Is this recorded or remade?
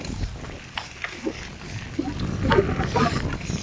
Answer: recorded